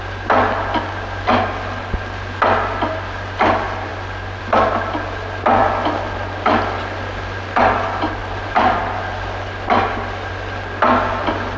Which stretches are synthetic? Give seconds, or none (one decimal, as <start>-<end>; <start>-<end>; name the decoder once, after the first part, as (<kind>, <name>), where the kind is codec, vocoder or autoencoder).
8.2-10.3 (vocoder, BigVGAN v2)